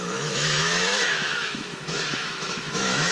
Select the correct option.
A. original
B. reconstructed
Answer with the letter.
B